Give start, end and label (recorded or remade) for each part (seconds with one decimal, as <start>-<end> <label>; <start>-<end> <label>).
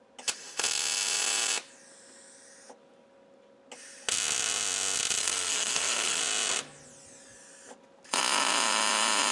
0.0-5.2 recorded; 5.2-6.2 remade; 6.2-9.3 recorded